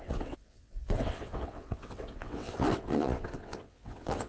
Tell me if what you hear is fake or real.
fake